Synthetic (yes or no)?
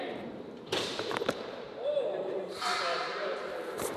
yes